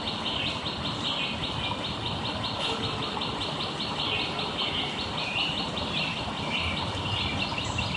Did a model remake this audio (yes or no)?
no